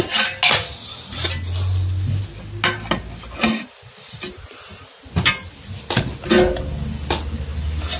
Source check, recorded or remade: recorded